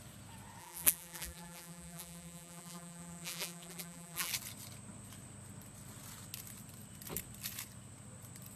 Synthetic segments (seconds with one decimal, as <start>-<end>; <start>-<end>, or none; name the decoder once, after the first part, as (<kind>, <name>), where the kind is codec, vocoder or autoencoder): 0.6-4.3 (vocoder, BigVGAN v2)